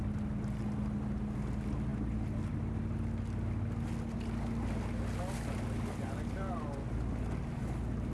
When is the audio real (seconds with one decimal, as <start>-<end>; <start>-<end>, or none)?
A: 0.0-8.1

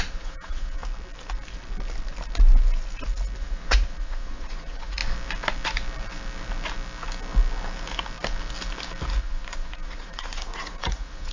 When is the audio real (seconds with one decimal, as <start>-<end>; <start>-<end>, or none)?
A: 0.8-3.4; 5.0-9.2

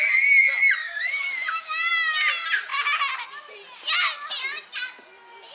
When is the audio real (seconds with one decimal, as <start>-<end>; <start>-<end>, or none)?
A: 0.0-0.8; 1.9-5.5

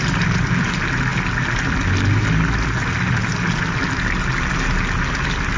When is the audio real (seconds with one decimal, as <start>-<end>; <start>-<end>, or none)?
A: 0.0-5.6